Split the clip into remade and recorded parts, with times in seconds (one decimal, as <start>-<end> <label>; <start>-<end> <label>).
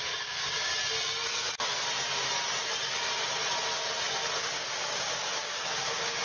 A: 0.0-0.7 remade; 0.7-4.4 recorded; 4.4-6.2 remade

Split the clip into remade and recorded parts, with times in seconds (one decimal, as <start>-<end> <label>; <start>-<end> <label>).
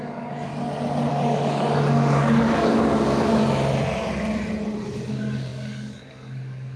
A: 0.0-0.5 remade; 0.5-1.1 recorded; 1.1-3.4 remade; 3.4-5.1 recorded; 5.1-6.8 remade